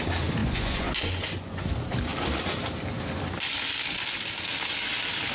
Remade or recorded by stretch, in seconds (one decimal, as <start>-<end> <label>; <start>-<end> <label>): 0.0-0.4 recorded; 0.4-1.7 remade; 1.7-5.3 recorded

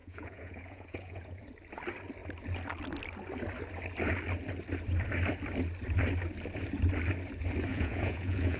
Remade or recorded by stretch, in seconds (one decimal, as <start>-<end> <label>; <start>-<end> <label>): 0.0-1.4 remade; 1.4-7.7 recorded; 7.7-8.6 remade

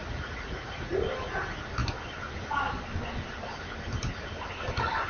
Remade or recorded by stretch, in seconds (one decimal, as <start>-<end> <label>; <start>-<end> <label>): 0.0-0.9 remade; 0.9-5.1 recorded

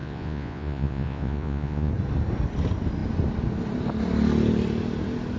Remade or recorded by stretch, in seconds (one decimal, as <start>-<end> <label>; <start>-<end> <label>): 0.0-1.9 remade; 1.9-5.4 recorded

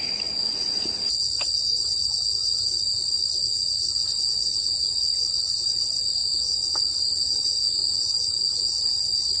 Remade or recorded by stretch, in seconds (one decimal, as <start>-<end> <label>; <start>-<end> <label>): 0.0-2.0 recorded; 2.0-2.8 remade; 2.8-3.4 recorded; 3.4-4.9 remade; 4.9-6.2 recorded; 6.2-6.7 remade; 6.7-7.2 recorded; 7.2-8.7 remade; 8.7-9.4 recorded